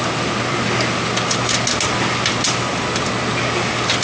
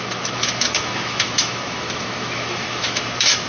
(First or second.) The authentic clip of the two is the first